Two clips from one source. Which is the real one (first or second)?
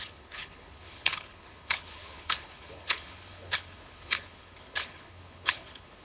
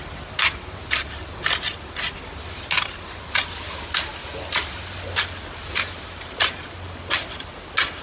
second